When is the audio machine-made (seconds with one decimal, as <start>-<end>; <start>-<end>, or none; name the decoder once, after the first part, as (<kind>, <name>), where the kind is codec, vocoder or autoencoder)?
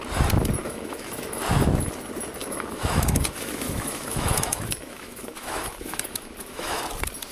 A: 0.6-1.4 (autoencoder, DAC-VAE); 2.4-6.8